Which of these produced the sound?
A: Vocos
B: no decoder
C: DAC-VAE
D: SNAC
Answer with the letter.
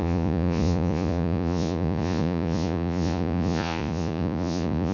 A